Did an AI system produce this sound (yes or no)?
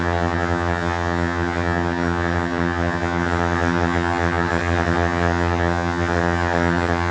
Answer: yes